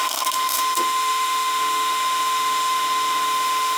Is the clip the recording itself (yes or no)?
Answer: no